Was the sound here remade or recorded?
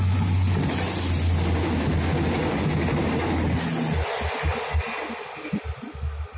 recorded